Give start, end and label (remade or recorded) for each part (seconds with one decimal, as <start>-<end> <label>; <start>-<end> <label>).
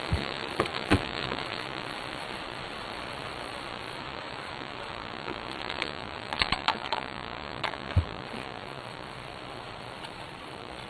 0.0-10.9 remade